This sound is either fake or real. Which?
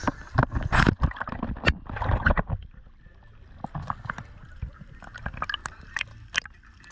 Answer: real